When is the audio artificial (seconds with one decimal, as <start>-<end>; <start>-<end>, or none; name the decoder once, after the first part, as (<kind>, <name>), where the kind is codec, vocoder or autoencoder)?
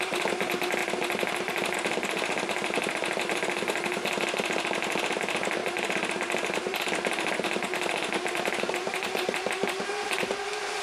none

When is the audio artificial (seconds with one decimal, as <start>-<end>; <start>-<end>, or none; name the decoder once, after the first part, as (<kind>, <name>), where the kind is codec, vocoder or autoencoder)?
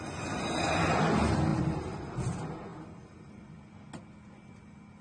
1.5-2.1 (vocoder, BigVGAN v2)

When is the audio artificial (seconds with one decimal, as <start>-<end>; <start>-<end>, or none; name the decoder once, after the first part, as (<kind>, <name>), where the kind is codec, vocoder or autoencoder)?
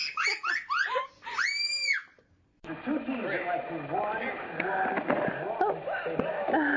none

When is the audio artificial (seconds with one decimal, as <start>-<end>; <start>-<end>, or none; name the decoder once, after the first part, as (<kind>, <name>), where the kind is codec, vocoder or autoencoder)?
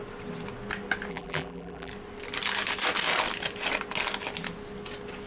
1.1-1.9 (vocoder, BigVGAN v2)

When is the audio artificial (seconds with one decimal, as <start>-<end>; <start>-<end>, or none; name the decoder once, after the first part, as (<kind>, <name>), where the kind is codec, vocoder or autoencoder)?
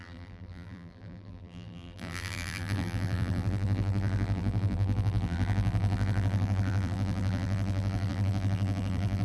0.0-9.2 (vocoder, BigVGAN v2)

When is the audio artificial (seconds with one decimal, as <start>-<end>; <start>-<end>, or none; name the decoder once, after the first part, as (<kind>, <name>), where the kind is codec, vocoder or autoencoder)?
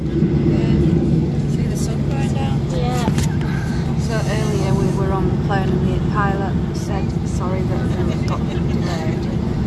3.0-3.7 (vocoder, BigVGAN v2)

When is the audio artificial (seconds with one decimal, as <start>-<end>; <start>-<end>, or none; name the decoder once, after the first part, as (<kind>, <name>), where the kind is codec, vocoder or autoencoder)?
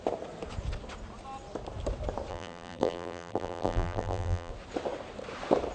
2.3-4.5 (vocoder, BigVGAN v2)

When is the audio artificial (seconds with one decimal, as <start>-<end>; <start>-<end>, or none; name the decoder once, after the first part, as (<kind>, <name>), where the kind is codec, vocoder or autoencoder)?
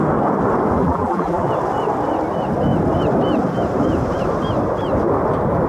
0.8-1.5 (vocoder, BigVGAN v2)